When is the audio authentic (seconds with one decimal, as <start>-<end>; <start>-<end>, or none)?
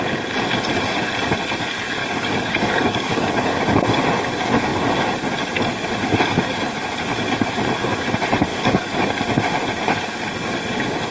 0.0-2.0; 4.1-8.5; 9.1-11.1